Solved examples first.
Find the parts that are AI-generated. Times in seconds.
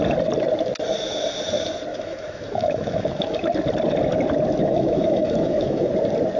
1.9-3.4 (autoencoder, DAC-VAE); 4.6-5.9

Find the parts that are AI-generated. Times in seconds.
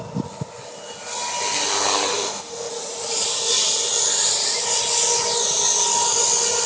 2.1-2.7 (autoencoder, DAC-VAE)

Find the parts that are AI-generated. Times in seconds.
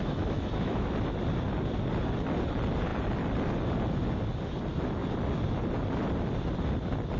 0.0-0.9 (autoencoder, DAC-VAE)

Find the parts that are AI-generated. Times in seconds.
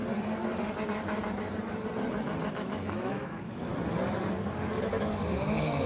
2.5-3.7 (autoencoder, DAC-VAE); 4.8-5.9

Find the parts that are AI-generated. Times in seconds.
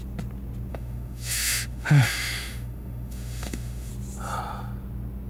0.7-3.9 (autoencoder, DAC-VAE)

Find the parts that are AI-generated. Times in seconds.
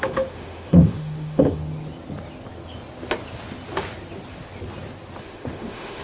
0.0-1.6 (autoencoder, DAC-VAE); 5.2-6.0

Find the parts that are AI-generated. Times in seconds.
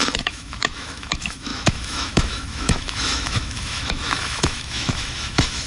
0.0-5.7 (autoencoder, DAC-VAE)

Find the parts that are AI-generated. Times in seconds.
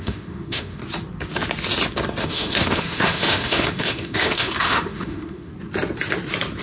0.0-0.8 (autoencoder, DAC-VAE); 2.2-5.5